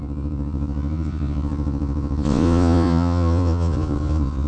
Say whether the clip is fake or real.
fake